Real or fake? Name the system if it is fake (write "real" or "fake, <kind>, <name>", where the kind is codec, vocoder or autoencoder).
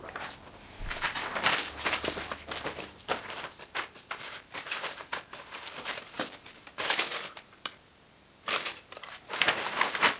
fake, vocoder, BigVGAN v2